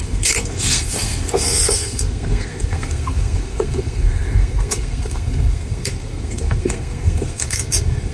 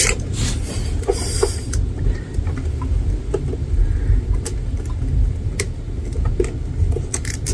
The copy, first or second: first